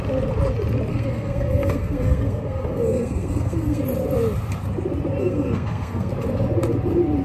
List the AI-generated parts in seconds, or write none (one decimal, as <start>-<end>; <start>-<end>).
0.9-3.8; 5.2-6.1